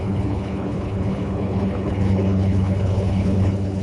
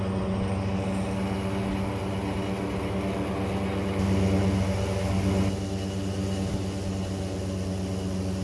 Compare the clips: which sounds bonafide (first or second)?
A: second